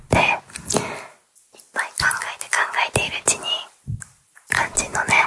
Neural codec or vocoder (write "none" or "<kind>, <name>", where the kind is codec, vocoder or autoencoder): none